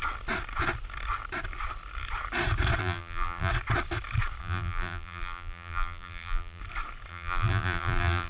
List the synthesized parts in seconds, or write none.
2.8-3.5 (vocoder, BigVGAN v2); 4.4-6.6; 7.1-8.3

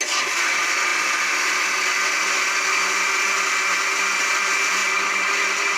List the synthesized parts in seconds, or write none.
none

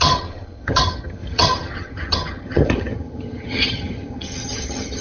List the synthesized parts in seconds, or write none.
0.0-5.0 (vocoder, HiFi-GAN)

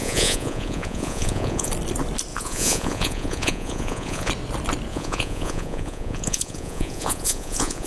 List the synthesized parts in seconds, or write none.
0.0-1.7 (vocoder, Vocos); 2.3-4.3; 4.9-7.9